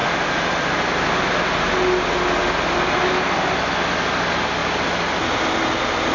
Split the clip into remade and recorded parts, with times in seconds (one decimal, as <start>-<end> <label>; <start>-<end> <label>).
0.0-6.1 recorded